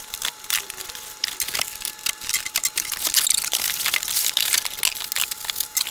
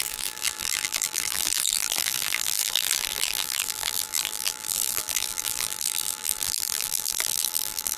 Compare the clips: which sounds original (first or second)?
first